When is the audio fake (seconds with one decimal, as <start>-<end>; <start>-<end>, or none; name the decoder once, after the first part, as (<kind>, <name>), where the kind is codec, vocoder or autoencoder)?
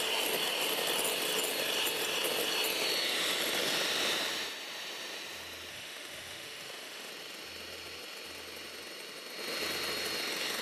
5.7-7.1 (autoencoder, DAC-VAE)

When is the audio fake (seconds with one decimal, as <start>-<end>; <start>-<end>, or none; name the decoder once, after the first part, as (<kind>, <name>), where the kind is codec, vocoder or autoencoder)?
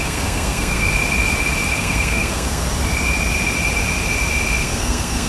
0.0-0.9 (codec, SNAC); 1.8-2.6; 4.6-5.3